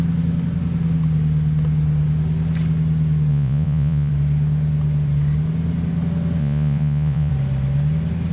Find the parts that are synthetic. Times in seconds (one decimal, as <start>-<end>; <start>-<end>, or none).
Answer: 3.3-4.1; 6.4-7.3